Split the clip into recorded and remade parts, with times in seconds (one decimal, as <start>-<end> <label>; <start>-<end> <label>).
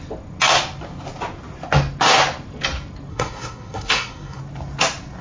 0.0-3.1 recorded; 3.1-4.4 remade; 4.4-5.2 recorded